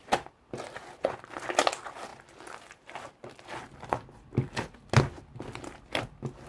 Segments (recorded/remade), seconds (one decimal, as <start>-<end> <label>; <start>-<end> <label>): 0.0-6.5 recorded